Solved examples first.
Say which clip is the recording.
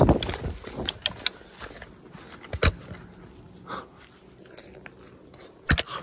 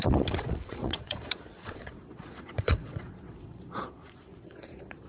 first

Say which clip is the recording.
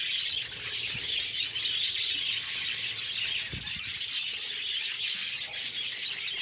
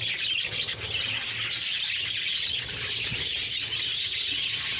first